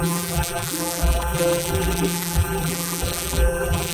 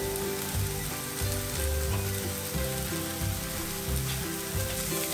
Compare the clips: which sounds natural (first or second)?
second